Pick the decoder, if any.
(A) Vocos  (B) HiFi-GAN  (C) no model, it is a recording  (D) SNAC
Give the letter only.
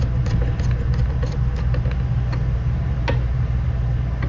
C